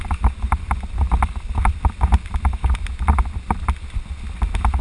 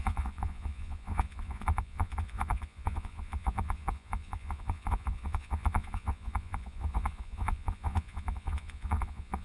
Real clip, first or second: first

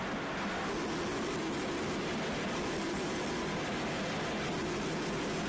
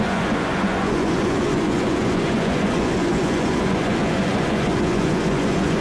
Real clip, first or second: first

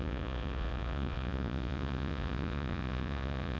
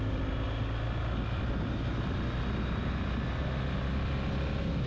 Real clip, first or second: second